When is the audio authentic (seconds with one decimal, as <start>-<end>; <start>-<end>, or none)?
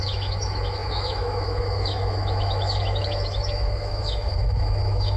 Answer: none